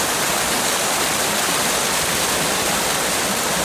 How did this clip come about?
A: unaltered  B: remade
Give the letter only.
A